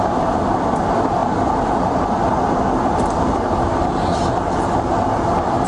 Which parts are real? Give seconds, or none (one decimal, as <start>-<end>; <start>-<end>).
0.0-5.7